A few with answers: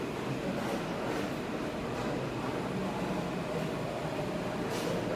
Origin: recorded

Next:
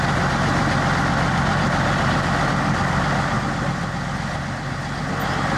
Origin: recorded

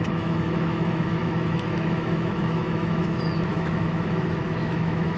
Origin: remade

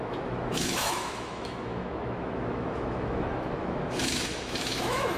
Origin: remade